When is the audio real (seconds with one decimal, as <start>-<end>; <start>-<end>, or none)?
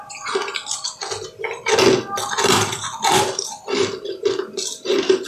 0.0-5.3